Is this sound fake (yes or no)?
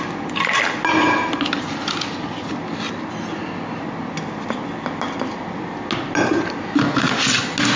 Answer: no